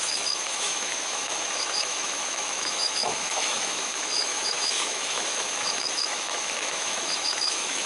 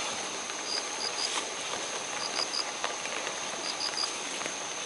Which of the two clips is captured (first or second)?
second